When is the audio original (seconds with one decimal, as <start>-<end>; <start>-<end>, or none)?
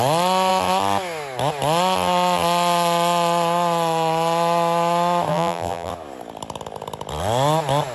0.0-5.3; 5.9-7.9